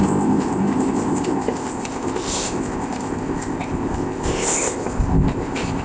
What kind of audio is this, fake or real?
fake